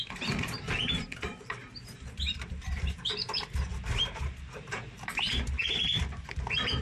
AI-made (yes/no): yes